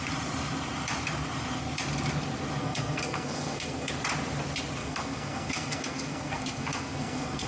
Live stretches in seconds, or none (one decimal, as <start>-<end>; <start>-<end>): 0.0-2.6; 3.9-4.8